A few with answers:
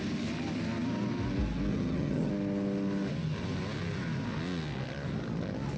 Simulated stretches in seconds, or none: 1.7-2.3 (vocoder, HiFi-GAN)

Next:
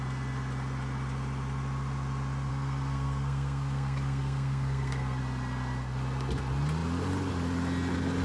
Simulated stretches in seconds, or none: 2.5-5.2 (codec, SNAC)

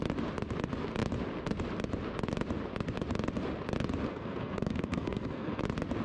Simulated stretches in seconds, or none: 4.1-5.6 (codec, SNAC)

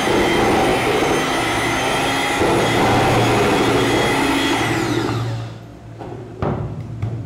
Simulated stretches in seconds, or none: 5.7-7.3 (vocoder, BigVGAN v2)

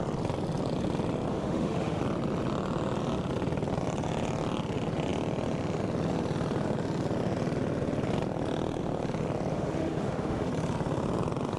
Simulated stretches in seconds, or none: 1.3-2.0 (autoencoder, DAC-VAE); 9.5-10.5

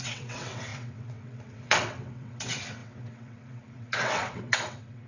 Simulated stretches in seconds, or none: 0.0-5.1 (vocoder, WaveNeXt)

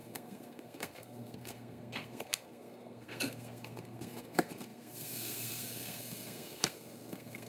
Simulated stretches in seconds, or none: 0.0-7.5 (codec, SNAC)